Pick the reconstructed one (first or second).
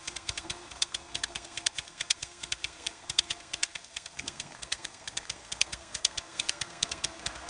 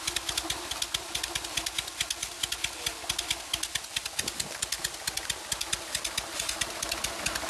first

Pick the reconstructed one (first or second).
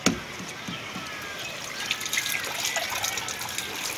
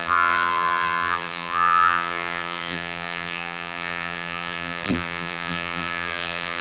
second